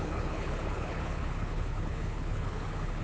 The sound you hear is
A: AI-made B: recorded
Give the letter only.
A